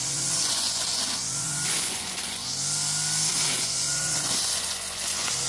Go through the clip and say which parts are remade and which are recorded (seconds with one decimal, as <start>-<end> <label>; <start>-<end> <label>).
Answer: 0.0-2.5 remade; 2.5-3.3 recorded; 3.3-5.5 remade